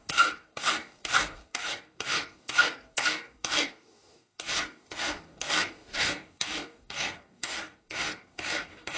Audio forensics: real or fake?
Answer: fake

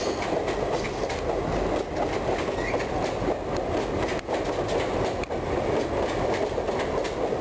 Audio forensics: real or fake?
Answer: real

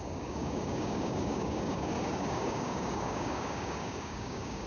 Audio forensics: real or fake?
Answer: fake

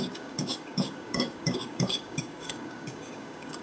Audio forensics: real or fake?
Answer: fake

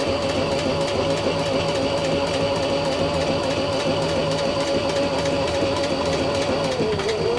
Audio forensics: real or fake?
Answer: real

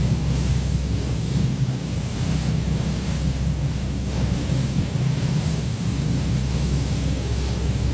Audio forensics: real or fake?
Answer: fake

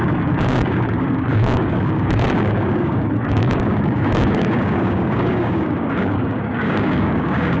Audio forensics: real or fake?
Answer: fake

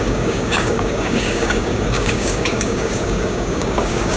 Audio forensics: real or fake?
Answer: fake